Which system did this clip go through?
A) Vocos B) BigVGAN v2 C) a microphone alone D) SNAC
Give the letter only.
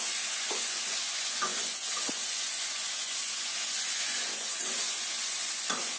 A